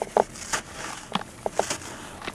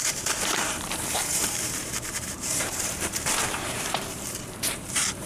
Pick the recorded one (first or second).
first